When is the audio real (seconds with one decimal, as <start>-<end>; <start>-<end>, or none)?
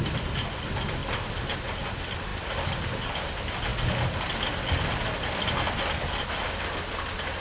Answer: 0.0-7.4